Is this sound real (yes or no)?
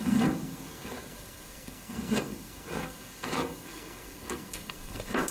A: no